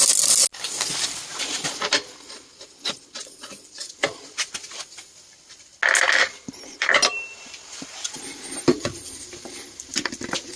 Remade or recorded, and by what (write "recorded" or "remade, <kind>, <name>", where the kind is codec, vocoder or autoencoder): recorded